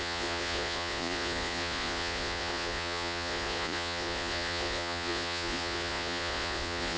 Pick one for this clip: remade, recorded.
remade